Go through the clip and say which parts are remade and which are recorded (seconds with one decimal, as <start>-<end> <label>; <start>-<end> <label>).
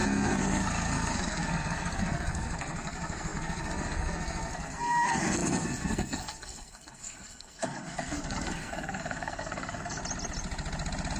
0.0-10.0 remade; 10.0-11.2 recorded